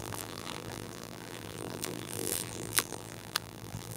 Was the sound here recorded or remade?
remade